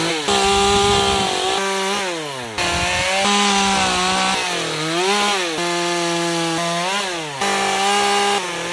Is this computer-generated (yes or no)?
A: no